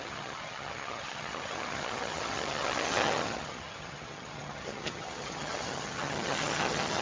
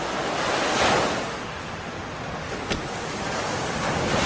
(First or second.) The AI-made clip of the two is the first